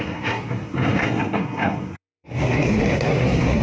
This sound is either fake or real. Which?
fake